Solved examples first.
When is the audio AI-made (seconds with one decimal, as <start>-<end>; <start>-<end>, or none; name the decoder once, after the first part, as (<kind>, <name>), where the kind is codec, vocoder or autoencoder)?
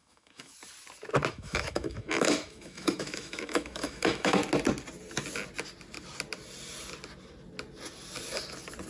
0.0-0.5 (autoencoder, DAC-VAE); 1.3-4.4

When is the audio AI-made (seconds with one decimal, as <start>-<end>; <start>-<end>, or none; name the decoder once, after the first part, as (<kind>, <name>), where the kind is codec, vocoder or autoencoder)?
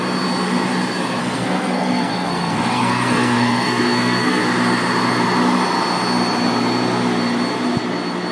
1.2-4.4 (codec, SNAC)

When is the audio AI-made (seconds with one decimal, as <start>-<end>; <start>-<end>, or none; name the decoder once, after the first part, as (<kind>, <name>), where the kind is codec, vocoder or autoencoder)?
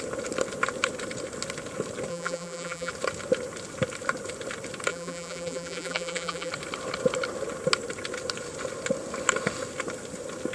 2.1-2.9 (vocoder, BigVGAN v2); 4.9-6.5